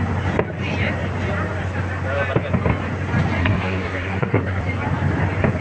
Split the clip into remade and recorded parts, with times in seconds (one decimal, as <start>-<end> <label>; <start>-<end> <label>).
0.0-3.4 recorded; 3.4-4.6 remade; 4.6-5.6 recorded

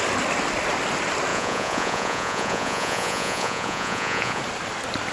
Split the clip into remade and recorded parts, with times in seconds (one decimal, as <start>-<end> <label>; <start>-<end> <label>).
0.0-1.3 recorded; 1.3-4.4 remade; 4.4-5.1 recorded

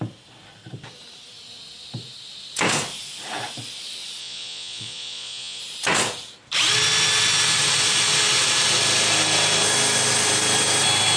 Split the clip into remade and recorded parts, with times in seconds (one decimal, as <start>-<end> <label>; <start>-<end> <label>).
0.0-4.2 recorded; 4.2-5.6 remade; 5.6-11.2 recorded

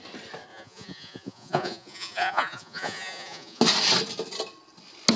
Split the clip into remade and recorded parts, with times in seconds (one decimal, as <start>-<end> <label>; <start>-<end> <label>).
0.0-0.5 recorded; 0.5-3.6 remade; 3.6-5.2 recorded

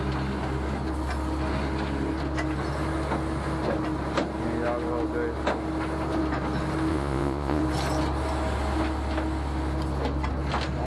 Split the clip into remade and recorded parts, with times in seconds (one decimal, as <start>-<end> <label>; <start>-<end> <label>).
0.0-6.9 recorded; 6.9-7.6 remade; 7.6-10.9 recorded

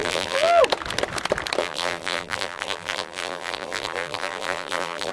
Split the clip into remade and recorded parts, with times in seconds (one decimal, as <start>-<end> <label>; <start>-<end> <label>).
0.0-0.6 remade; 0.6-1.6 recorded; 1.6-5.1 remade

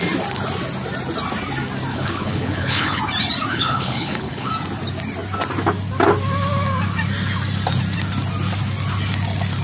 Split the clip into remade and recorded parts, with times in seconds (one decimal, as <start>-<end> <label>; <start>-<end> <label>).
0.0-1.9 recorded; 1.9-3.0 remade; 3.0-3.5 recorded; 3.5-4.5 remade; 4.5-9.6 recorded

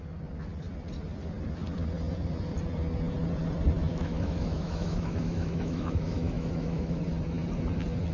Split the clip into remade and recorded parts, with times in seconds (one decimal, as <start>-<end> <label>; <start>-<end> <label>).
0.0-3.9 recorded; 3.9-7.0 remade; 7.0-8.1 recorded